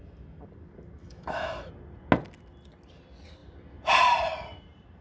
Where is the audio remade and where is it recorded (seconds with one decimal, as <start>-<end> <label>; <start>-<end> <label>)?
0.0-1.0 recorded; 1.0-1.7 remade; 1.7-5.0 recorded